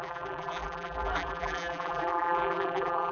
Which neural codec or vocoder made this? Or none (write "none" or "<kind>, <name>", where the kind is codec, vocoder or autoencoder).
vocoder, BigVGAN v2